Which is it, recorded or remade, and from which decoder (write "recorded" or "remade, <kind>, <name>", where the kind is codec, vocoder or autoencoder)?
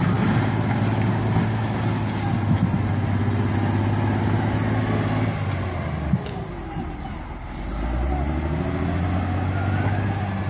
recorded